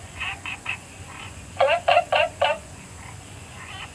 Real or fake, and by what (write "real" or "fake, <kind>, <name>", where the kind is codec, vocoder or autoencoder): fake, vocoder, Vocos